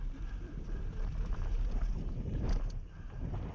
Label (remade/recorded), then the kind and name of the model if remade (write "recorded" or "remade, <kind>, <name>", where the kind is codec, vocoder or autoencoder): recorded